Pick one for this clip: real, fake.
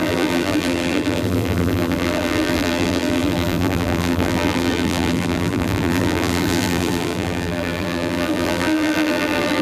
fake